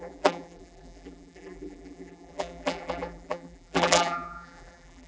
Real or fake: fake